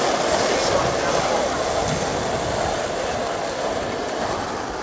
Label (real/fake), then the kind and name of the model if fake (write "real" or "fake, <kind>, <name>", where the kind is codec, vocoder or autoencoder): real